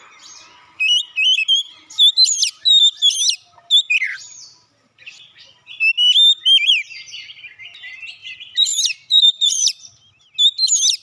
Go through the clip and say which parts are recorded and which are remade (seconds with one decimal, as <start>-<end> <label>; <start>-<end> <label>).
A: 0.0-8.2 recorded; 8.2-9.7 remade; 9.7-11.0 recorded